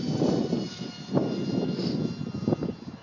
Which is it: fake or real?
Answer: real